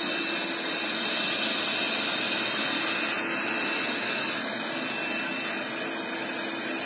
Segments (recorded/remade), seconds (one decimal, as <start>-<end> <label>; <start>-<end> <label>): 0.0-6.9 recorded